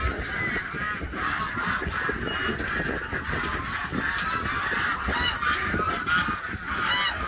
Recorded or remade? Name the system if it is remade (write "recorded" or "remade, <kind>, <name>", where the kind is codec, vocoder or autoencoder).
recorded